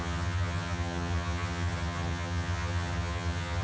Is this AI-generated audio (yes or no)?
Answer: yes